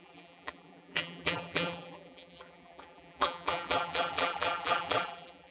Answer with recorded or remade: remade